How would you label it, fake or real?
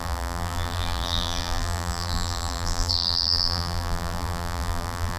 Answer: fake